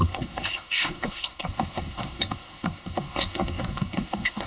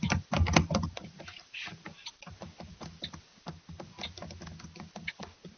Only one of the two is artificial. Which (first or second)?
first